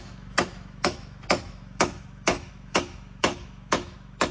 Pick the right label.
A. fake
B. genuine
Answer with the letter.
A